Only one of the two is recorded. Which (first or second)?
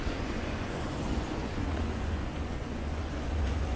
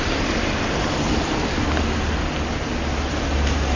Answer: second